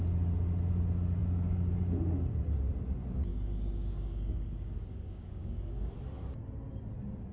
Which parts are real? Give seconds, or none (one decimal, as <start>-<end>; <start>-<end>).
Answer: 0.0-3.3; 5.9-7.3

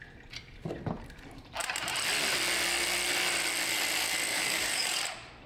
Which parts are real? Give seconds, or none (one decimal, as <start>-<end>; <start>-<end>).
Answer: 0.0-4.3; 5.0-5.5

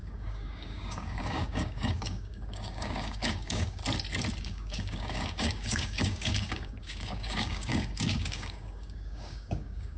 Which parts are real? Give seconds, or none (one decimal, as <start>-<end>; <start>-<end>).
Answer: 3.8-4.4

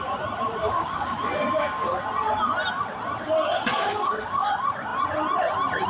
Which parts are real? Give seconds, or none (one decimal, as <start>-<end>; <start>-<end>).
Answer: 0.0-0.6; 2.0-3.7; 4.5-5.9

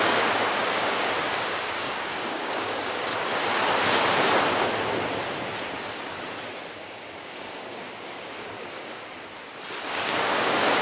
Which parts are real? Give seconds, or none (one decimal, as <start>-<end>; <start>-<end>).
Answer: 3.1-6.7; 9.3-9.9

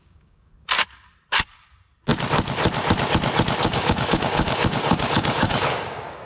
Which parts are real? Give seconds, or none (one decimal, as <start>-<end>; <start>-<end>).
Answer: 0.5-3.6

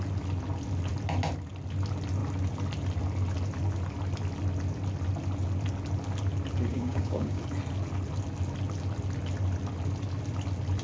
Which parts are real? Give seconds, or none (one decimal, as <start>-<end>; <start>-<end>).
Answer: 0.0-6.7; 7.4-10.8